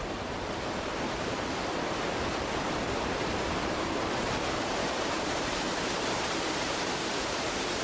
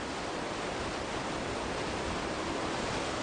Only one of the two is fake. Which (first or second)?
first